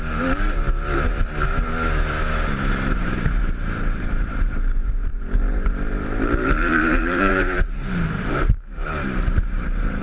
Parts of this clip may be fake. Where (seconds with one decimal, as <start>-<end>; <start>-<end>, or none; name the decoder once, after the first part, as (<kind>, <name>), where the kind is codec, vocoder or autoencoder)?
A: 0.0-1.7 (vocoder, BigVGAN v2); 2.9-10.0